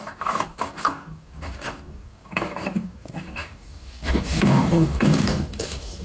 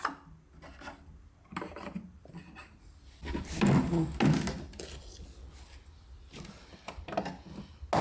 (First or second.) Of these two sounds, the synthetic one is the first